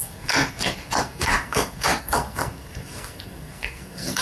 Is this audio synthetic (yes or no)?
yes